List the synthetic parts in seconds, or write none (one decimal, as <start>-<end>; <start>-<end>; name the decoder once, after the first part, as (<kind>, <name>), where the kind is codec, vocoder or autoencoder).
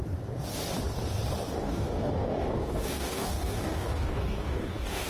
1.6-5.1 (codec, DAC)